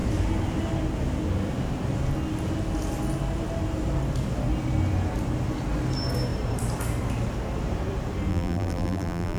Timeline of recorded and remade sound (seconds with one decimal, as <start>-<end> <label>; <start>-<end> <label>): 0.0-8.3 recorded; 8.3-9.4 remade